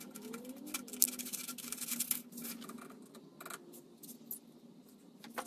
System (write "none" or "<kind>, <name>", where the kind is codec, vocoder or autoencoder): none